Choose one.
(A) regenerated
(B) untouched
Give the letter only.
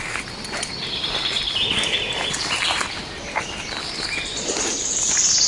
B